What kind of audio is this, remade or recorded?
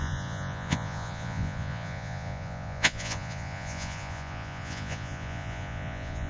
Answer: remade